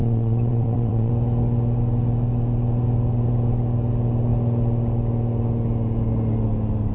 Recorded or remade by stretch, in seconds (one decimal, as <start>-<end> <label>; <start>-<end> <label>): 0.0-1.1 remade; 1.1-6.9 recorded